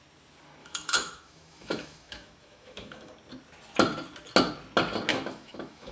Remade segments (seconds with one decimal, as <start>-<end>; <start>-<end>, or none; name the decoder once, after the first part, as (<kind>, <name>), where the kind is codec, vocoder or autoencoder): 0.6-3.1 (autoencoder, DAC-VAE); 5.1-5.9